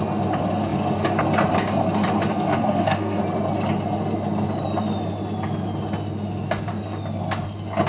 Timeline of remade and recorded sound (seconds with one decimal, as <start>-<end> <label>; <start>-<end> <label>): 0.0-2.3 recorded; 2.3-3.2 remade; 3.2-7.9 recorded

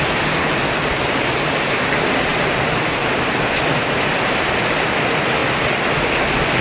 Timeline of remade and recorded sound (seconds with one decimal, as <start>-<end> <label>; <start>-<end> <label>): 0.0-6.6 recorded

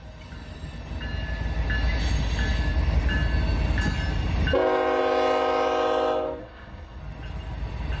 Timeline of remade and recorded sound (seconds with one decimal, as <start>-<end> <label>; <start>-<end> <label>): 0.0-6.4 recorded; 6.4-7.0 remade; 7.0-8.0 recorded

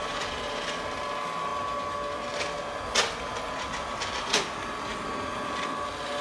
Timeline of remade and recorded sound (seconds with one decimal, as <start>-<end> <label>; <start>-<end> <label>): 0.0-6.2 recorded

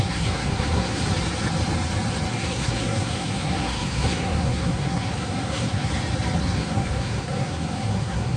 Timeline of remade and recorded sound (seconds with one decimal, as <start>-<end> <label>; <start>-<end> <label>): 0.0-1.0 remade; 1.0-2.3 recorded; 2.3-5.9 remade; 5.9-6.4 recorded; 6.4-8.4 remade

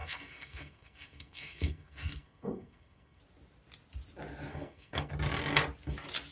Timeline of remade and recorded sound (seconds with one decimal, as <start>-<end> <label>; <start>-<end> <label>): 0.0-3.2 remade; 3.2-4.5 recorded; 4.5-5.1 remade; 5.1-6.3 recorded

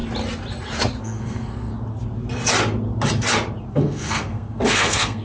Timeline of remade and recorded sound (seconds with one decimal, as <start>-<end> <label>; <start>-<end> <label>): 0.0-1.0 recorded; 1.0-1.7 remade; 1.7-3.7 recorded; 3.7-5.2 remade